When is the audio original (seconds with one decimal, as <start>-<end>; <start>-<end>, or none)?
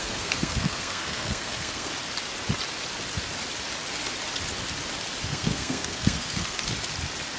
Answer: 1.9-5.3; 6.6-7.4